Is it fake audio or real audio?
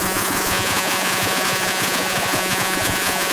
fake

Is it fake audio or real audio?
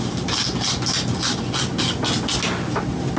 real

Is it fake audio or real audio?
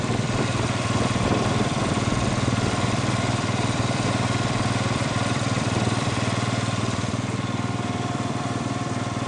fake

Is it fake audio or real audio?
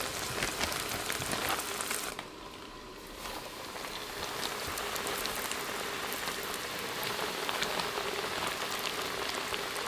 real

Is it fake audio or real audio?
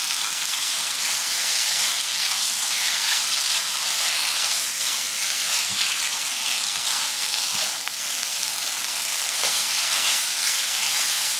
fake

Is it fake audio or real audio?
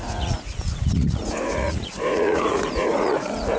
fake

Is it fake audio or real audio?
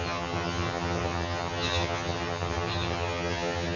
fake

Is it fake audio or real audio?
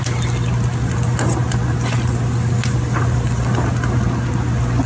real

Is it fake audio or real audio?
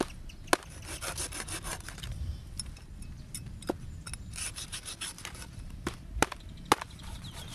real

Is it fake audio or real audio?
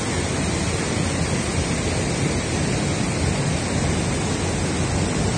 real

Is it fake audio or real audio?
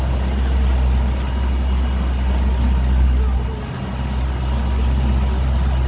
real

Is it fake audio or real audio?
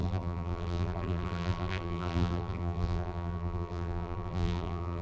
fake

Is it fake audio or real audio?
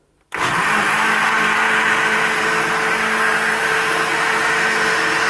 real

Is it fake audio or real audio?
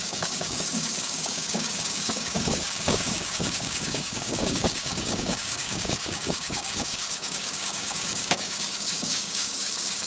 fake